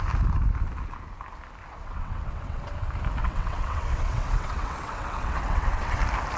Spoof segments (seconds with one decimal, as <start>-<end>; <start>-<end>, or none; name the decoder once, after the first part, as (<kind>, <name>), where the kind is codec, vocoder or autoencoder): 1.6-2.6 (vocoder, WaveNeXt); 3.2-6.0